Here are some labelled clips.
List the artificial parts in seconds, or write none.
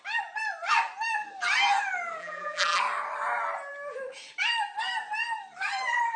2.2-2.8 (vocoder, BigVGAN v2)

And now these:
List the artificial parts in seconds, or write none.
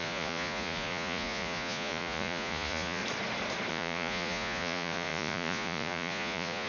0.0-3.0 (vocoder, Vocos); 3.7-6.7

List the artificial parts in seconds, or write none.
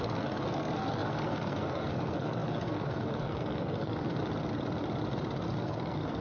0.0-4.2 (codec, SNAC); 5.6-6.2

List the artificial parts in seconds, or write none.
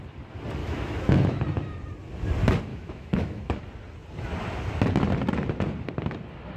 0.6-1.4 (autoencoder, DAC-VAE); 2.7-3.6